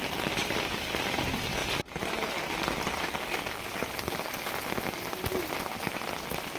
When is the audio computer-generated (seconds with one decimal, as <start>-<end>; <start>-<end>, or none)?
none